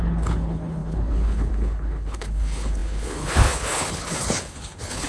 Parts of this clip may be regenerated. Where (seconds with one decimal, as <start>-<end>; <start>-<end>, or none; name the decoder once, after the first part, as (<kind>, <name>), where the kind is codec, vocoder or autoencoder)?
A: 0.0-5.1 (codec, HILCodec)